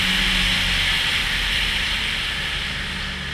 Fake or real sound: real